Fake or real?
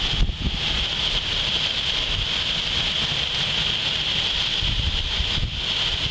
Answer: real